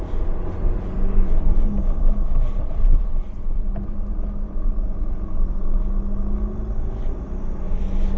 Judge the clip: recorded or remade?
recorded